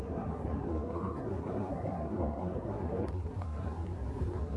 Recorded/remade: remade